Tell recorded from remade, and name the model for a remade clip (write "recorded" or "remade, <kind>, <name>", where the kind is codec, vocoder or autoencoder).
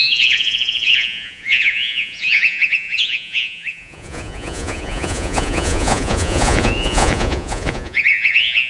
remade, vocoder, Vocos